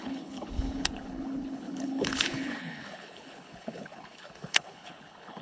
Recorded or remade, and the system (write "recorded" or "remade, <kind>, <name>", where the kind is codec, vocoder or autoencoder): remade, codec, HILCodec